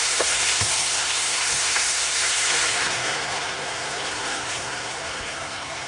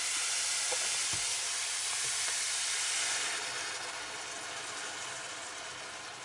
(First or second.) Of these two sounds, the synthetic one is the first